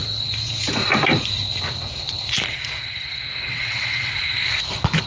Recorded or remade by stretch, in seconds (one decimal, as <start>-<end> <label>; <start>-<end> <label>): 0.0-3.5 recorded; 3.5-4.1 remade; 4.1-5.1 recorded